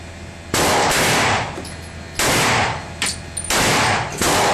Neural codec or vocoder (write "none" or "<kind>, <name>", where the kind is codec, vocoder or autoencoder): none